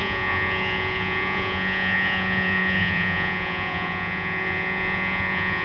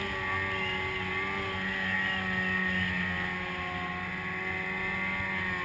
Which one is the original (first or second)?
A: second